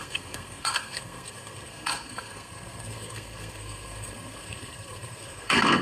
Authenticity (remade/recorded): remade